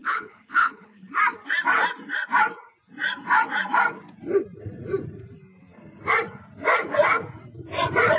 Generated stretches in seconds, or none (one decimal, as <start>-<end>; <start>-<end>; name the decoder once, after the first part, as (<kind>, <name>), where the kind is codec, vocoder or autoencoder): 0.0-1.1 (codec, HILCodec)